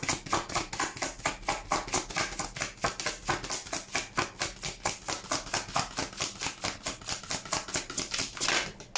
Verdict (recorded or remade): recorded